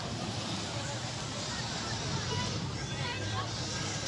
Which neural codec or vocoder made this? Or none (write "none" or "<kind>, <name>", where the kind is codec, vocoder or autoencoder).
none